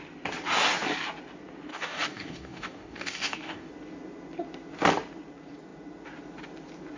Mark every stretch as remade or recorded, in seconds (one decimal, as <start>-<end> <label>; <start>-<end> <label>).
0.0-1.7 recorded; 1.7-3.7 remade; 3.7-7.0 recorded